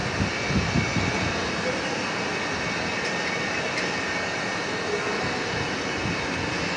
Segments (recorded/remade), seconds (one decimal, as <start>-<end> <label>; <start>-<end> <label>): 0.0-6.8 recorded